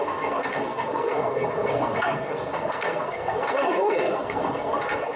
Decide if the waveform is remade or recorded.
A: remade